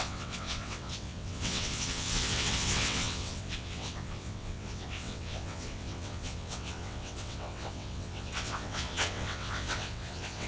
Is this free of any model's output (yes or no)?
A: no